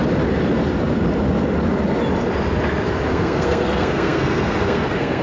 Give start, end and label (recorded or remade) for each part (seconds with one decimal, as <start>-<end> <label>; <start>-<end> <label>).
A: 0.0-3.1 recorded; 3.1-5.2 remade